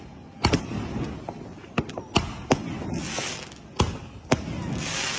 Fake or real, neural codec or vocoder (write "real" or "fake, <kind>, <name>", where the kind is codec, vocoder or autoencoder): real